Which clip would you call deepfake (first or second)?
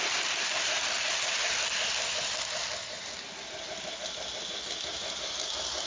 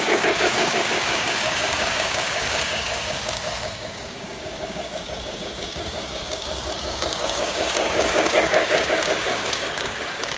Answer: second